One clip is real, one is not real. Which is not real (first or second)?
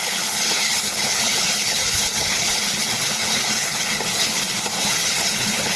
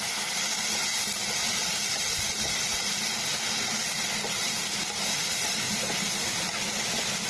first